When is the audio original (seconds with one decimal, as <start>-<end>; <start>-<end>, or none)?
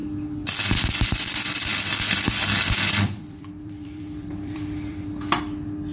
0.0-1.7; 5.2-5.9